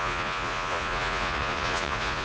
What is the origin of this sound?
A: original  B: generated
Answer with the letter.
B